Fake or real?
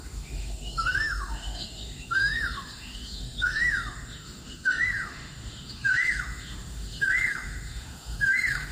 fake